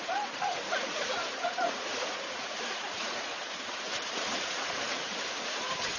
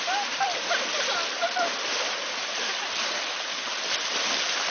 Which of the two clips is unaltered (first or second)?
second